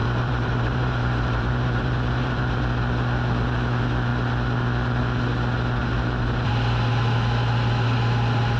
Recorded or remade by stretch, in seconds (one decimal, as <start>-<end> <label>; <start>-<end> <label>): 0.0-2.6 remade; 2.6-5.8 recorded; 5.8-6.5 remade; 6.5-8.6 recorded